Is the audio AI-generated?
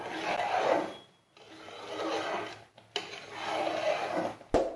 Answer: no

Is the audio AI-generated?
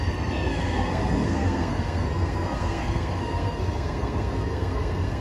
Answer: yes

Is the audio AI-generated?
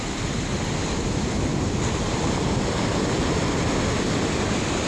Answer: no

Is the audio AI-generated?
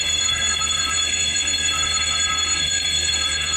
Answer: yes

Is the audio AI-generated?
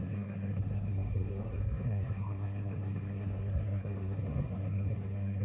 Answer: yes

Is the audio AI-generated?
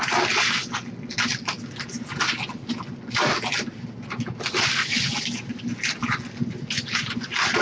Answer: no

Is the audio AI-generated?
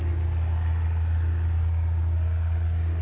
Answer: no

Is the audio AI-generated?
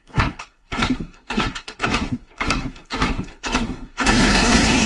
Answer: yes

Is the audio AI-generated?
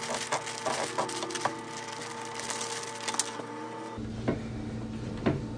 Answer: no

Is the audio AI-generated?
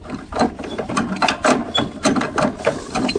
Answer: no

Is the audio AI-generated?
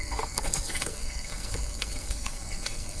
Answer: yes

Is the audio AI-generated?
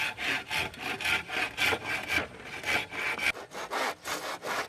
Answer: no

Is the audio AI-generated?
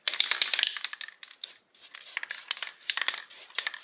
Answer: no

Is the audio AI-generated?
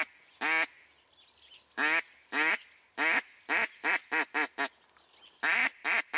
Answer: no